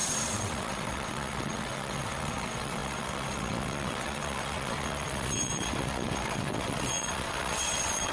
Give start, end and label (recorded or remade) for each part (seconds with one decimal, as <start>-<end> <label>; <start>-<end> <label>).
0.0-8.1 remade